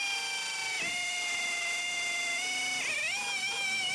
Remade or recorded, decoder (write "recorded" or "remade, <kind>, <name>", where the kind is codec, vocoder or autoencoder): recorded